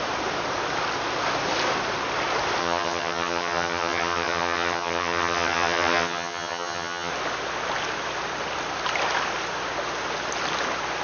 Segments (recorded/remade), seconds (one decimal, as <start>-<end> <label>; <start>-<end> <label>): 0.0-2.6 recorded; 2.6-7.1 remade; 7.1-11.0 recorded